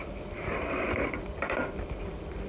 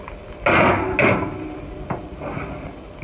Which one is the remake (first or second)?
first